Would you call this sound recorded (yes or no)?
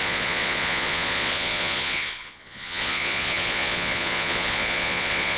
no